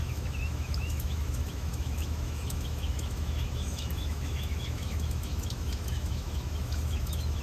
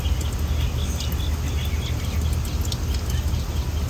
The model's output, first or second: first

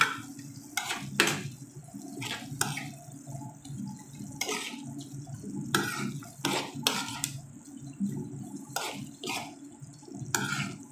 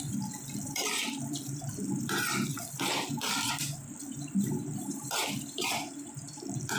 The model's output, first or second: second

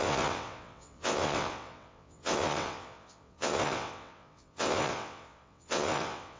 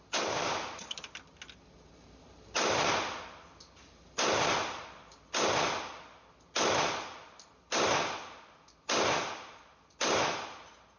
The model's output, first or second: first